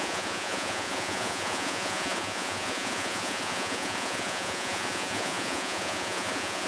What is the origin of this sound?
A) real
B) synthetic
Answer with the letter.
B